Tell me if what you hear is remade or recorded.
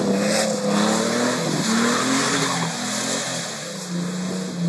recorded